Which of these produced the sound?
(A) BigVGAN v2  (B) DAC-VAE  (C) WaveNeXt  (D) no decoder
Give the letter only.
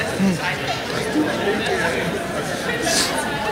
D